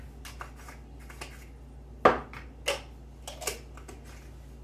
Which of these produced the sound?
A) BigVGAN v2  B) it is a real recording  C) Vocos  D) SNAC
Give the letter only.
B